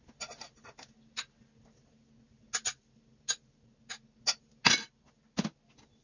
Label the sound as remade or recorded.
recorded